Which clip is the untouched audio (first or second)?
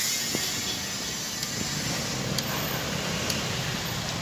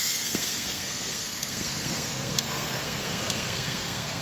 first